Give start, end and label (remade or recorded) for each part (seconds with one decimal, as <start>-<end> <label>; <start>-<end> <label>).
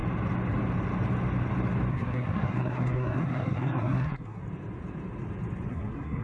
0.0-1.9 recorded; 1.9-4.4 remade; 4.4-5.7 recorded; 5.7-6.2 remade